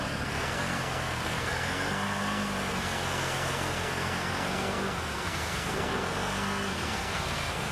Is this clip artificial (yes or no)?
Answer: yes